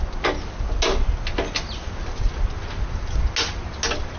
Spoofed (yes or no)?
no